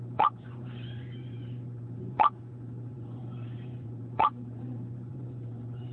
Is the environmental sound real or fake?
fake